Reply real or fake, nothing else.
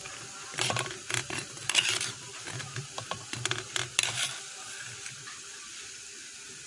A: fake